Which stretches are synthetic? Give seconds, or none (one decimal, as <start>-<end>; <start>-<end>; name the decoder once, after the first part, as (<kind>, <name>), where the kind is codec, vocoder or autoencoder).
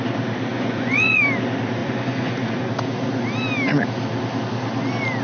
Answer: 0.5-1.2 (vocoder, Vocos); 1.8-2.7